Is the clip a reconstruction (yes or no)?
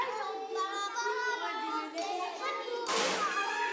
no